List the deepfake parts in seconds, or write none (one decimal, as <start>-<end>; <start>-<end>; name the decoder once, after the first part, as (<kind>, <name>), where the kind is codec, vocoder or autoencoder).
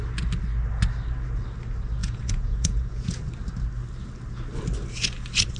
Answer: 2.0-3.2 (vocoder, Vocos)